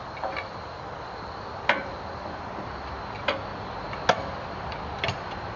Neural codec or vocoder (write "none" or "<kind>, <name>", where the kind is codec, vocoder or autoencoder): none